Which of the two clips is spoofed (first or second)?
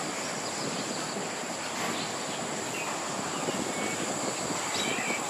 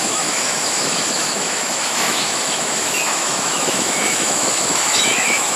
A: second